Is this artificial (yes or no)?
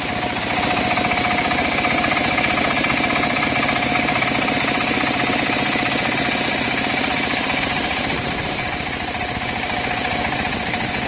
no